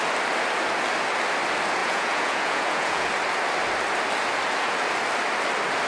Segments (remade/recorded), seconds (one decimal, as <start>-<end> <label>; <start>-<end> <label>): 0.0-1.8 recorded; 1.8-3.1 remade; 3.1-5.9 recorded